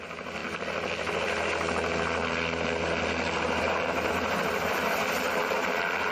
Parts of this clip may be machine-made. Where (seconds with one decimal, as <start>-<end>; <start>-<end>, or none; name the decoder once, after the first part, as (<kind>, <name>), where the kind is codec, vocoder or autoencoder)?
none